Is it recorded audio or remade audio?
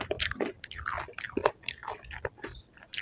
recorded